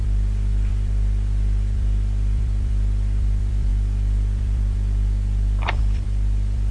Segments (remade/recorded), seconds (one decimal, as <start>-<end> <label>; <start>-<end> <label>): 0.0-6.7 remade